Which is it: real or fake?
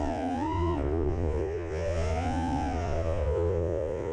fake